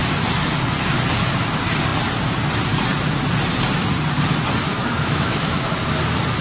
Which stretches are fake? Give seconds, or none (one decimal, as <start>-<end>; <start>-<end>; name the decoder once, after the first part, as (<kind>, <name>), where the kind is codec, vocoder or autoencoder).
4.7-5.8 (autoencoder, DAC-VAE)